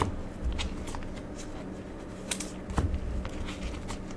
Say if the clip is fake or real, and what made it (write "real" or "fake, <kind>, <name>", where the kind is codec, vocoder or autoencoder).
real